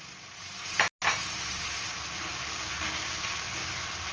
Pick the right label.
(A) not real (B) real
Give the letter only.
B